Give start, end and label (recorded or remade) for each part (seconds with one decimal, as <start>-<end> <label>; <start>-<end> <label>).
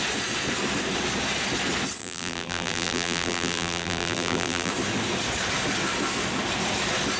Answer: 0.0-2.0 recorded; 2.0-4.7 remade; 4.7-7.2 recorded